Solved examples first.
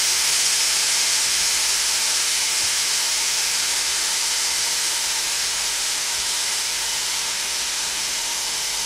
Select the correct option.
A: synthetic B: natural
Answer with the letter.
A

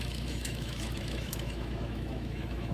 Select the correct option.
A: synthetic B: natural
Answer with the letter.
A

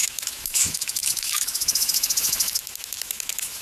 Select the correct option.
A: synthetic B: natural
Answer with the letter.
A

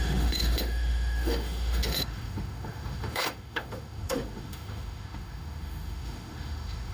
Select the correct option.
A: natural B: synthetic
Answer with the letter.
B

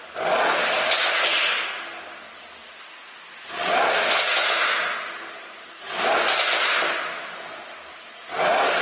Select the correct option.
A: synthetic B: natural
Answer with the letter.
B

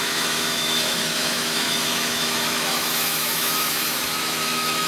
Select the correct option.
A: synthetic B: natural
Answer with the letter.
A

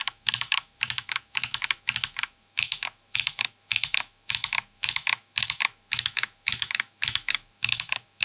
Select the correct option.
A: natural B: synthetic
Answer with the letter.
B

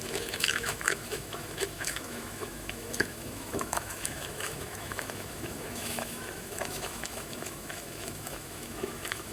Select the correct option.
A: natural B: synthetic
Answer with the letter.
B